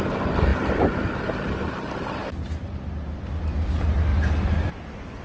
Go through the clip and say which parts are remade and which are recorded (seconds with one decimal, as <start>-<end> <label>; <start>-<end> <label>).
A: 0.0-5.2 recorded